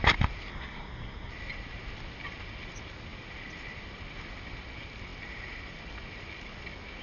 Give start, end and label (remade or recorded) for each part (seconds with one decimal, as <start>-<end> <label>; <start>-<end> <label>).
0.0-0.5 recorded; 0.5-1.3 remade; 1.3-7.0 recorded